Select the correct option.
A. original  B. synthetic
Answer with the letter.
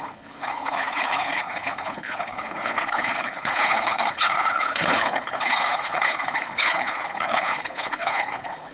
B